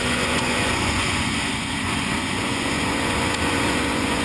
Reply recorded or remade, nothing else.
remade